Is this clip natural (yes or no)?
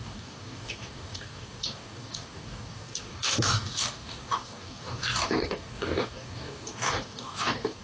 no